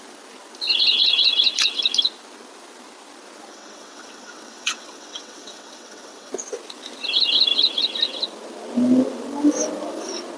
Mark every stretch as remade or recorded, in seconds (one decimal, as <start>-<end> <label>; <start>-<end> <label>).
0.0-3.5 recorded; 3.5-6.3 remade; 6.3-10.4 recorded